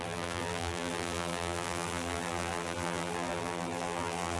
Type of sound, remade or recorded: remade